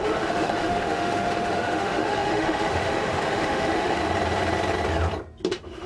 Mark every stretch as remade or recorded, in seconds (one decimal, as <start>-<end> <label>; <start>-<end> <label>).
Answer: 0.0-4.0 remade; 4.0-5.5 recorded; 5.5-5.9 remade